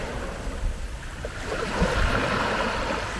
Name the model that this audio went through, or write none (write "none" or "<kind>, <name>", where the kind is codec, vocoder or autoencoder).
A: none